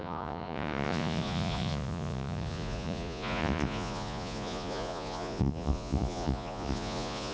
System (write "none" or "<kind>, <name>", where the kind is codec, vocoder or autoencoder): vocoder, Vocos